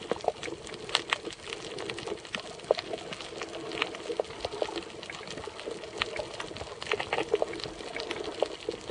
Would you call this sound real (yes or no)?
yes